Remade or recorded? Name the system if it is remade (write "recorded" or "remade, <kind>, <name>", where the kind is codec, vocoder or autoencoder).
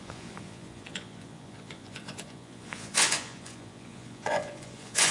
remade, vocoder, Vocos